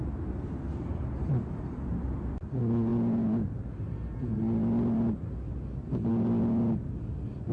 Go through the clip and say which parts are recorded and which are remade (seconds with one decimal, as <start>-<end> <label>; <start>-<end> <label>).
0.0-0.7 recorded; 0.7-2.2 remade; 2.2-7.5 recorded